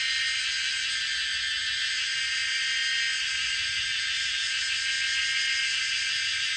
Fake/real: real